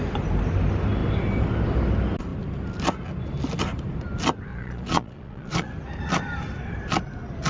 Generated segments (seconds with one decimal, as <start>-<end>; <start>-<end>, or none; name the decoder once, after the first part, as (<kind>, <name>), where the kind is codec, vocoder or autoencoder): 4.5-5.7 (vocoder, Vocos)